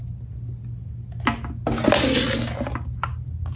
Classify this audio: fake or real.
real